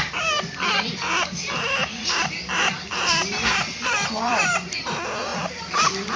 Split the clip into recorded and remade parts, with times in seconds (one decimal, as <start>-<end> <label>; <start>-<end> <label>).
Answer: 0.0-6.2 remade